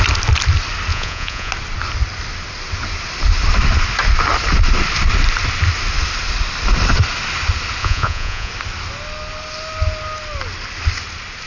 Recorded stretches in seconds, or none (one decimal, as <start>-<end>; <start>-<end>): 0.0-0.9; 1.5-7.8; 8.5-11.5